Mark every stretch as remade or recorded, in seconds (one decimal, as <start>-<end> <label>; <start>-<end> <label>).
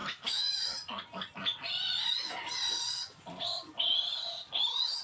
0.0-0.6 remade; 0.6-5.0 recorded